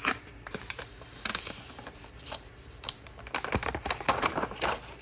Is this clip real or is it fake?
fake